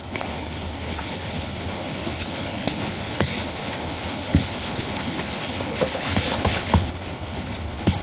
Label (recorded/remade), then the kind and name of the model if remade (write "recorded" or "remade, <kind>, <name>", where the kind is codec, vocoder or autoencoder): remade, codec, HILCodec